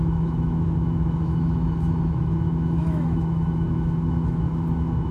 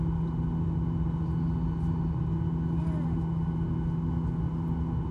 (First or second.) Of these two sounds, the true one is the second